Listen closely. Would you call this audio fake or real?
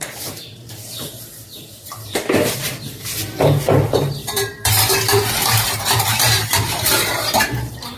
fake